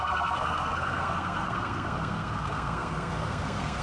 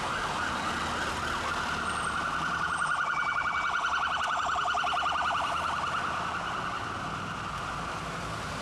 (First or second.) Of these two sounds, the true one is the second